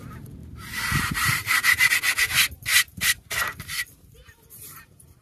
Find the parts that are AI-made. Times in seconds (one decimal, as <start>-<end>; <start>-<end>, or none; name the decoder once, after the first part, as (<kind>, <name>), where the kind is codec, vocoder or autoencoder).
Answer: 0.4-1.9 (vocoder, BigVGAN v2); 2.7-5.2